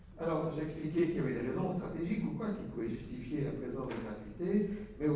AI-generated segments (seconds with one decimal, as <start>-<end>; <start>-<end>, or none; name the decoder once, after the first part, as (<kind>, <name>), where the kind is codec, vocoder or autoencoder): 0.8-3.9 (vocoder, BigVGAN v2)